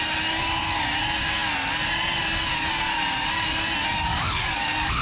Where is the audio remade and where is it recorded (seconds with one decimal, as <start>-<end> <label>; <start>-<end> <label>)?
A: 0.0-4.1 recorded; 4.1-5.0 remade

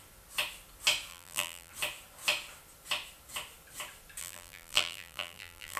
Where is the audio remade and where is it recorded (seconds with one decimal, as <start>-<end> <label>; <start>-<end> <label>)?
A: 0.0-1.1 recorded; 1.1-1.7 remade; 1.7-4.2 recorded; 4.2-5.8 remade

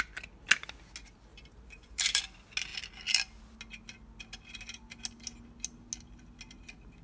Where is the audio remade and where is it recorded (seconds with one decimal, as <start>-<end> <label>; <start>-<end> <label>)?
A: 0.0-1.3 recorded; 1.3-2.2 remade; 2.2-7.0 recorded